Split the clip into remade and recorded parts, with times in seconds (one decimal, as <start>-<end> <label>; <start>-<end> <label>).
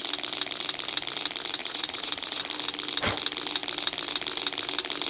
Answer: 0.0-1.6 recorded; 1.6-2.4 remade; 2.4-5.1 recorded